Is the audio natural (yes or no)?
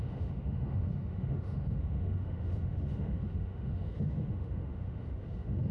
no